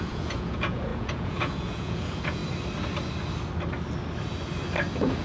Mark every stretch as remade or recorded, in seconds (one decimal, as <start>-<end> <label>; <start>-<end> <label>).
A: 0.0-2.4 remade; 2.4-5.2 recorded

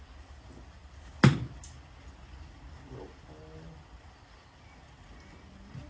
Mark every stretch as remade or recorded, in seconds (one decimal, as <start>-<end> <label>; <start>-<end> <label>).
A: 0.0-5.9 recorded

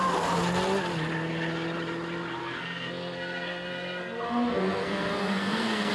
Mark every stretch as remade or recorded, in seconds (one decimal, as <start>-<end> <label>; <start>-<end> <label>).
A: 0.0-2.4 recorded; 2.4-5.9 remade

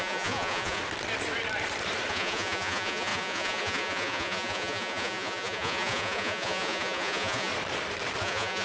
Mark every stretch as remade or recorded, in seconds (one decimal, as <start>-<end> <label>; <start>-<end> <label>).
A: 0.0-0.8 remade; 0.8-2.1 recorded; 2.1-7.5 remade; 7.5-8.2 recorded; 8.2-8.6 remade